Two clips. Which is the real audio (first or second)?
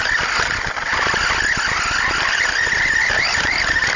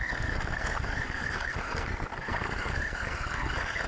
first